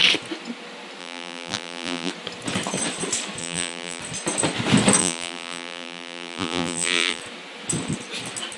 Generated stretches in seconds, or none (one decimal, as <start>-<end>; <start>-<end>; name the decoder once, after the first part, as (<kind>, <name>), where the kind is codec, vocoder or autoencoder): 1.0-2.1 (vocoder, BigVGAN v2); 3.4-4.0; 5.0-7.2